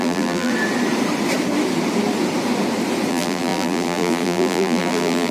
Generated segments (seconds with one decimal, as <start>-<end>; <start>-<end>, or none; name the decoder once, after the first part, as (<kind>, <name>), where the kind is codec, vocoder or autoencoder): 0.0-0.5 (vocoder, BigVGAN v2); 3.1-5.3